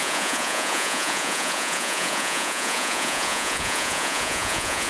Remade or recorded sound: remade